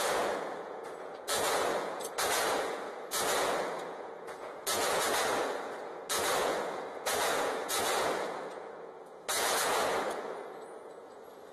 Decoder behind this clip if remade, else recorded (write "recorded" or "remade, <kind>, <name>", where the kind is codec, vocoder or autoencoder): remade, vocoder, Vocos